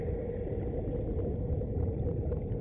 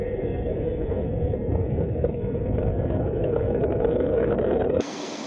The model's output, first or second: second